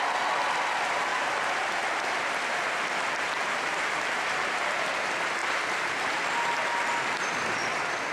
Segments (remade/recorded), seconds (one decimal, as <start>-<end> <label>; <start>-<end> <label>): 0.0-1.1 recorded; 1.1-4.9 remade; 4.9-5.4 recorded; 5.4-6.1 remade; 6.1-8.1 recorded